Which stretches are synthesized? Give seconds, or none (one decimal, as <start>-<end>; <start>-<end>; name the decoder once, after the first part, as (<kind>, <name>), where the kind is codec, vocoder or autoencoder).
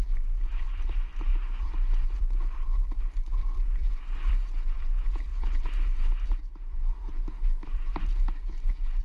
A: 0.0-9.0 (vocoder, BigVGAN v2)